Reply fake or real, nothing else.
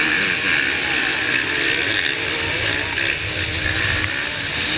real